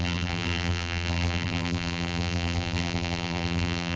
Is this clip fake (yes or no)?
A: yes